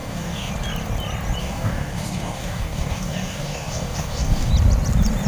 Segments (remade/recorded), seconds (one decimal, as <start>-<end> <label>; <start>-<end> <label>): 0.0-0.5 remade; 0.5-1.4 recorded; 1.4-4.5 remade; 4.5-5.3 recorded